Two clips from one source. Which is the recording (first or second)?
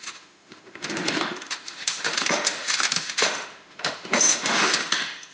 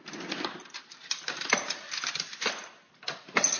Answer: second